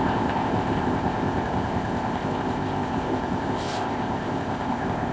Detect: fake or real fake